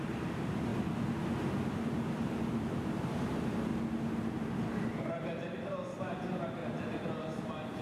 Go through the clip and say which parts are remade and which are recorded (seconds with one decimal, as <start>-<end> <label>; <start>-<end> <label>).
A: 0.0-0.7 remade; 0.7-1.7 recorded; 1.7-3.7 remade; 3.7-6.0 recorded; 6.0-6.6 remade; 6.6-7.8 recorded